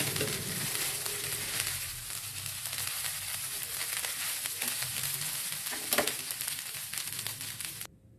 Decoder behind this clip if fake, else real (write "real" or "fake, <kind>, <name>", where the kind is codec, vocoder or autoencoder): real